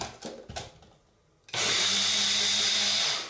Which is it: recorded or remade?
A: recorded